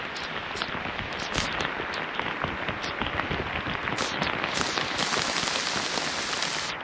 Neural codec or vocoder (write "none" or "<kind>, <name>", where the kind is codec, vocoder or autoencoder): none